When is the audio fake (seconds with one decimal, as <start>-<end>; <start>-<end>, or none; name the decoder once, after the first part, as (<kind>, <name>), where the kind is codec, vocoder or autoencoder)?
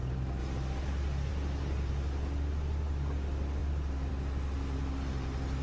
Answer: none